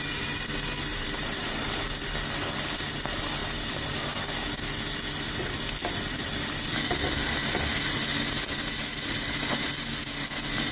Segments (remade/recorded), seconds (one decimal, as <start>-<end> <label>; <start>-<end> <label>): 0.0-0.9 recorded; 0.9-1.7 remade; 1.7-3.4 recorded; 3.4-3.9 remade; 3.9-10.7 recorded